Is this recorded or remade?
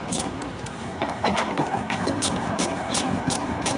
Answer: remade